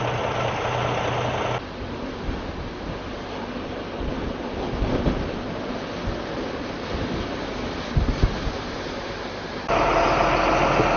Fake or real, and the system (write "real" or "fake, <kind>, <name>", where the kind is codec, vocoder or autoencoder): real